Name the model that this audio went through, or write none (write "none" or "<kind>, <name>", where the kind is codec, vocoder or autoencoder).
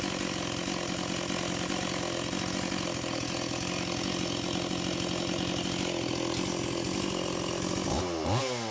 none